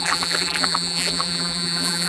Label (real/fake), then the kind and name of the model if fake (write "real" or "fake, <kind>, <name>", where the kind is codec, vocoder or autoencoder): fake, vocoder, BigVGAN v2